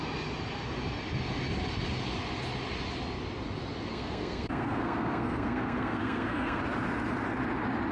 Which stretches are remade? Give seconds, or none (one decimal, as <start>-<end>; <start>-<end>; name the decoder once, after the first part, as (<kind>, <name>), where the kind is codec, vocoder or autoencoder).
3.9-6.6 (codec, SNAC)